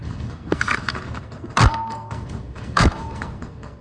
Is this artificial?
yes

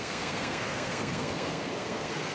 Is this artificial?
yes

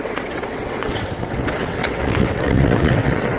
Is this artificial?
yes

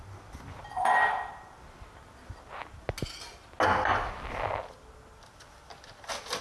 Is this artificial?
no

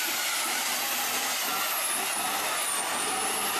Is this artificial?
no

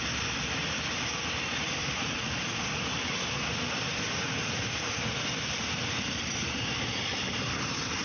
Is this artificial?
no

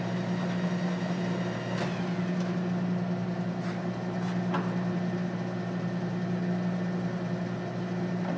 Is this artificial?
no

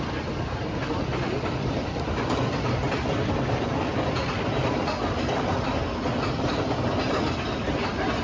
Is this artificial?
no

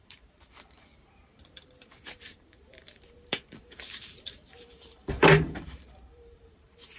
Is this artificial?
yes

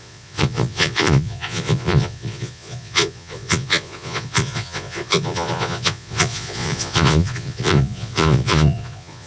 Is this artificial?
yes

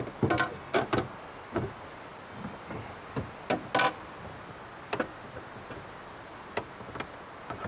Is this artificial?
no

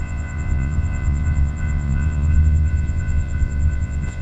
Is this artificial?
yes